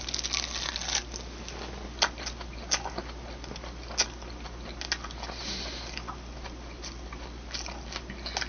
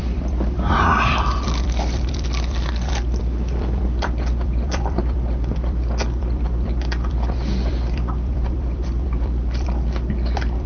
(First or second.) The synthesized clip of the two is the second